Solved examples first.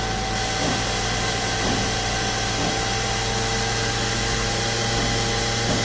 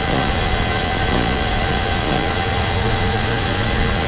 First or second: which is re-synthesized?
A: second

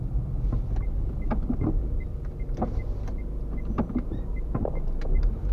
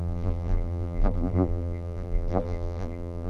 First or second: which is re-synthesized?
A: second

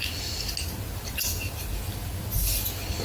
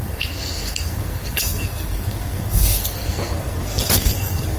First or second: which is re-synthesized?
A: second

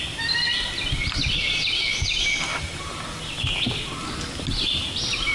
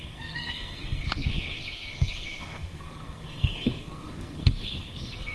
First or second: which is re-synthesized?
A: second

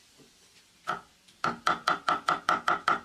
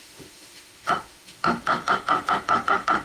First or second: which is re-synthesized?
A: second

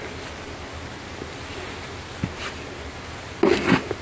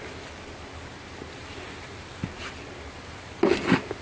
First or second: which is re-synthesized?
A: second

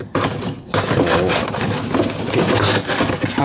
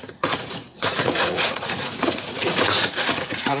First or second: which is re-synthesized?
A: second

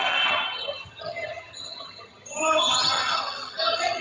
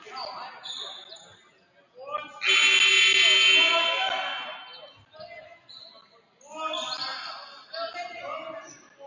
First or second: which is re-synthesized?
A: first